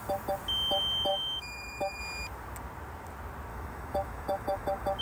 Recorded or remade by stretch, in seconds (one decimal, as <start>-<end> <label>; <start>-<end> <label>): 0.0-1.1 recorded; 1.1-2.0 remade; 2.0-3.5 recorded; 3.5-5.0 remade